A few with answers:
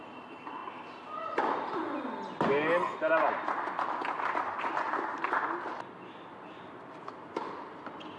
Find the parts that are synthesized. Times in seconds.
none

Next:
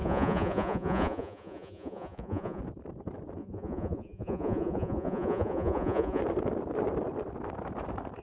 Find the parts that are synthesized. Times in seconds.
0.0-2.6 (vocoder, Vocos); 3.4-6.2

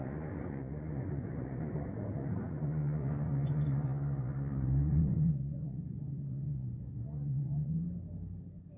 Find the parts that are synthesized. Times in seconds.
0.0-7.8 (vocoder, Vocos)

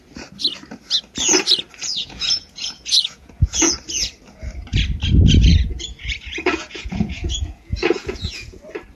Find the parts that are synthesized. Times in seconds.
2.0-3.7 (vocoder, Vocos); 5.5-8.6

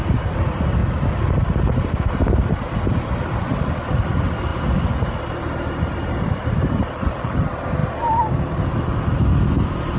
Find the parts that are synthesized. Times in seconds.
none

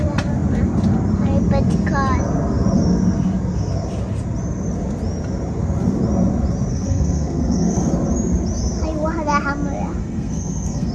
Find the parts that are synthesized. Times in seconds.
6.7-7.9 (codec, SNAC); 10.0-10.9

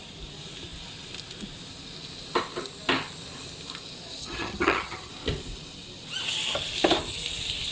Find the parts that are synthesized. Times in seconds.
4.2-5.1 (vocoder, HiFi-GAN)